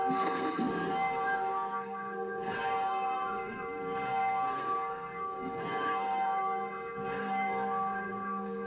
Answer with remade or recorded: remade